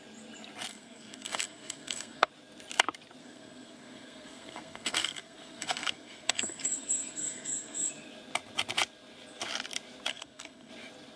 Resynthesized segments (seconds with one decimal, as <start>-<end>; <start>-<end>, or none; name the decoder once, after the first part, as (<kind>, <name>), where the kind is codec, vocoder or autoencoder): 0.7-2.3 (codec, SNAC); 3.2-7.9; 10.1-10.7